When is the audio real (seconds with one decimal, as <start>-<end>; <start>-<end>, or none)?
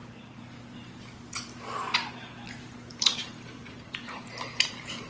0.0-2.1